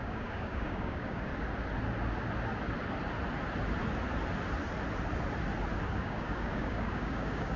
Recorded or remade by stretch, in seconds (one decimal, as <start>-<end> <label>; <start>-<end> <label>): 0.0-1.3 remade; 1.3-5.9 recorded; 5.9-7.6 remade